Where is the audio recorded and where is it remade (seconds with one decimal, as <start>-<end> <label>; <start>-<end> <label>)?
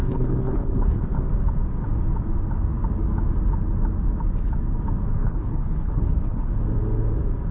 0.0-1.2 remade; 1.2-5.1 recorded; 5.1-6.5 remade; 6.5-7.5 recorded